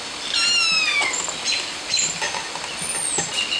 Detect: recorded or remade recorded